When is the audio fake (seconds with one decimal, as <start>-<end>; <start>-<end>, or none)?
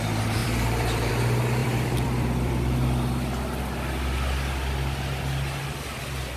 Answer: 0.4-1.1; 1.6-2.6